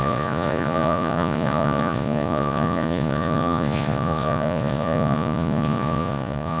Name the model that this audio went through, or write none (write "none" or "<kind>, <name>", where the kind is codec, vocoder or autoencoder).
vocoder, Vocos